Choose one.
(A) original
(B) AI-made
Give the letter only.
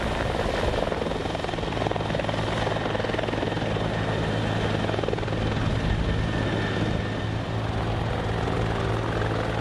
A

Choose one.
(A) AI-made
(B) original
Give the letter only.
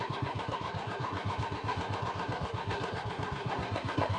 A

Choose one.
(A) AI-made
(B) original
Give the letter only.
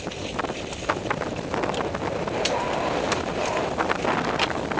A